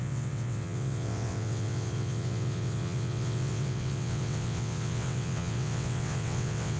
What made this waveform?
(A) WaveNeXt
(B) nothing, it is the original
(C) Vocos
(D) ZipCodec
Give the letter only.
A